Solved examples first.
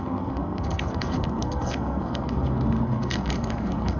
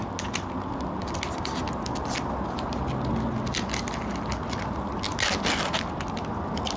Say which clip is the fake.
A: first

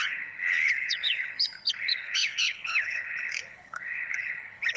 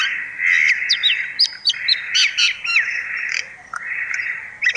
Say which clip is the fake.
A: first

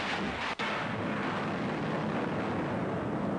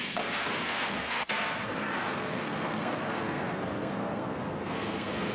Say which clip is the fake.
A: second